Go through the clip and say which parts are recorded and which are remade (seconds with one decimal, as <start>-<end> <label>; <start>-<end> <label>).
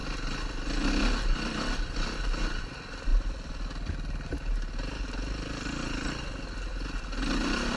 0.0-3.1 recorded; 3.1-3.9 remade; 3.9-7.8 recorded